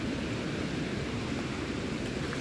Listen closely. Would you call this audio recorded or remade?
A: recorded